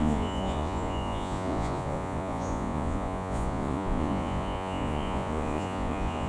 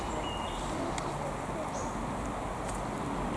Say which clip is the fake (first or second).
first